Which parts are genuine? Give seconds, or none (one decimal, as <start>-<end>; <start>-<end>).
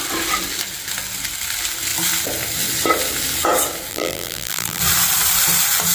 0.0-3.9; 4.8-5.9